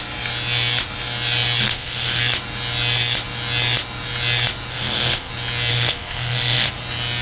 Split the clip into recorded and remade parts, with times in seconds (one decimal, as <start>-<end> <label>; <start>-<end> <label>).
0.0-1.6 recorded; 1.6-2.2 remade; 2.2-4.7 recorded; 4.7-5.3 remade; 5.3-5.7 recorded; 5.7-6.7 remade; 6.7-7.2 recorded